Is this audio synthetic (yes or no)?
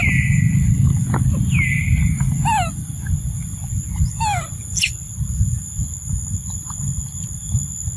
no